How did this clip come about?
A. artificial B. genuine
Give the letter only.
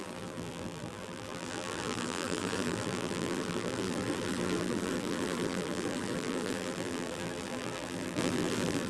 A